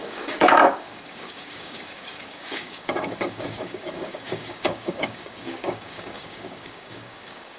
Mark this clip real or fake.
fake